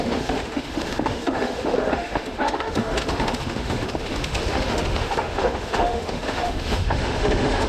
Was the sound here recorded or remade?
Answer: remade